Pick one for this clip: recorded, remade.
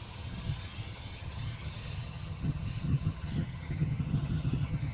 remade